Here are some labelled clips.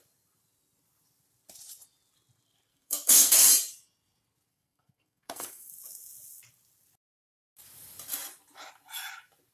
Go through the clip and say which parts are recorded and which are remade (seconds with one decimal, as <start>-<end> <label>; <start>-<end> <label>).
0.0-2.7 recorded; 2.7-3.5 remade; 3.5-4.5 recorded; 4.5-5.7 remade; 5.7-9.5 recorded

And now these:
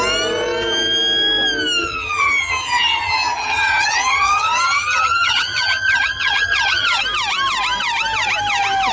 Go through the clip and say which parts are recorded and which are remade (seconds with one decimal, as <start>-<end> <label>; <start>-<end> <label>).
0.0-1.8 recorded; 1.8-7.0 remade; 7.0-8.9 recorded

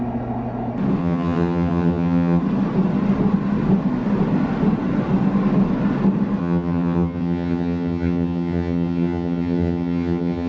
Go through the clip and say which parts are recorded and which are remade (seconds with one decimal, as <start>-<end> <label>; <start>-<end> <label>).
0.0-1.0 recorded; 1.0-2.4 remade; 2.4-6.4 recorded; 6.4-10.5 remade

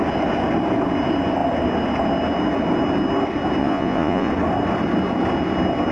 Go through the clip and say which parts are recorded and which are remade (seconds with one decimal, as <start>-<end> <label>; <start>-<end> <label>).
0.0-3.6 recorded; 3.6-4.3 remade; 4.3-5.9 recorded

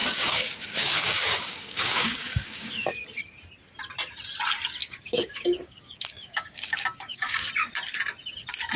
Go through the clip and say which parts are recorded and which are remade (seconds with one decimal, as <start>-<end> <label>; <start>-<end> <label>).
0.0-3.0 remade; 3.0-4.8 recorded; 4.8-7.5 remade; 7.5-8.8 recorded